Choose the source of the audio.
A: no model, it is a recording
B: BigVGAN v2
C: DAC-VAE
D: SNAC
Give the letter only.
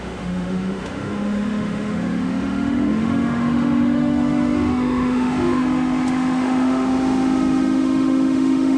C